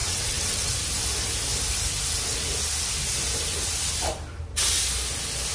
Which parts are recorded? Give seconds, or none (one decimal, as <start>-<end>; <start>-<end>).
0.7-5.5